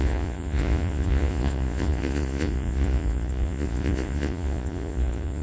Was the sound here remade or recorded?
remade